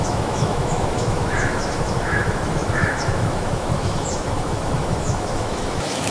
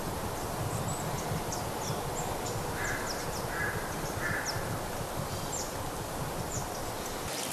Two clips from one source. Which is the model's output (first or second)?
first